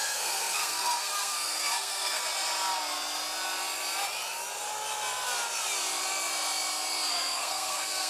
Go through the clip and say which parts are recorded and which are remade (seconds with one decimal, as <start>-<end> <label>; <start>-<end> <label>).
0.0-2.2 remade; 2.2-7.1 recorded; 7.1-8.1 remade